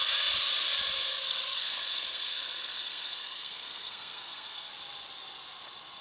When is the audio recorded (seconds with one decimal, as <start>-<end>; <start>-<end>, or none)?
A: 0.0-1.1; 4.7-6.0